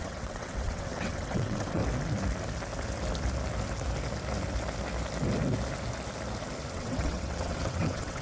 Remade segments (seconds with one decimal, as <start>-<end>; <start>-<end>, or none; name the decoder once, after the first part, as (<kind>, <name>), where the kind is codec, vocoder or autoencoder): 0.0-1.8 (vocoder, WaveNeXt); 6.7-8.2